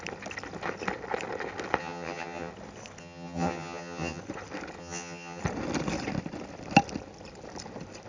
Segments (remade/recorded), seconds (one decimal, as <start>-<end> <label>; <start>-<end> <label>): 0.0-1.8 recorded; 1.8-2.5 remade; 2.5-3.0 recorded; 3.0-4.2 remade; 4.2-4.8 recorded; 4.8-5.4 remade; 5.4-8.1 recorded